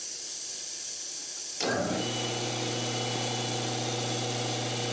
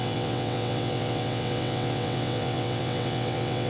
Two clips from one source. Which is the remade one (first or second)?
second